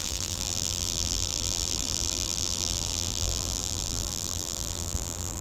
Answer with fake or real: fake